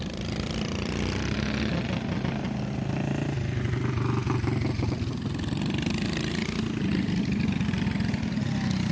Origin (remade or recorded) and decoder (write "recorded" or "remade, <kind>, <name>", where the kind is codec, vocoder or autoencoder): recorded